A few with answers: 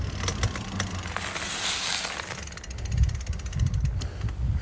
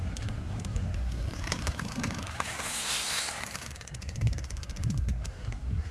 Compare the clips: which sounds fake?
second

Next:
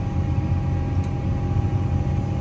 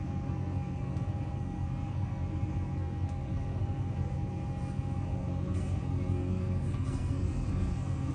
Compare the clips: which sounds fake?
second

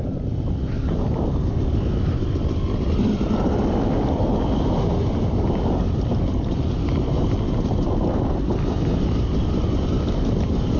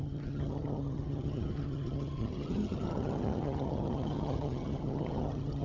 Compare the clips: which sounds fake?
second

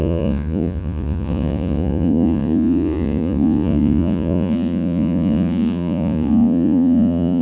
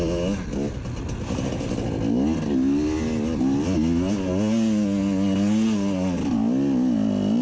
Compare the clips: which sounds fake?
first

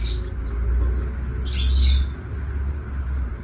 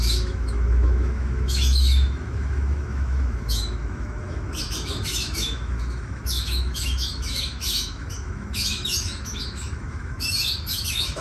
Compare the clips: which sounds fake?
second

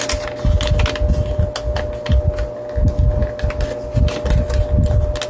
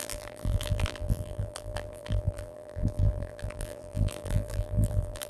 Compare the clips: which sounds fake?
second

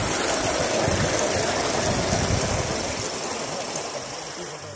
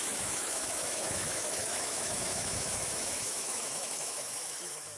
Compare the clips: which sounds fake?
second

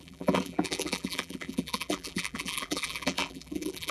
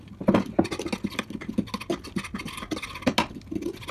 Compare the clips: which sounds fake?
first